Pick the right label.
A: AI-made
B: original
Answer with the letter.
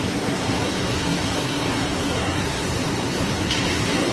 A